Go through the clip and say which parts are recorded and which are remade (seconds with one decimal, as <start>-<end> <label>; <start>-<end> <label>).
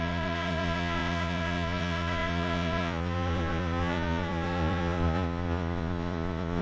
0.0-6.6 remade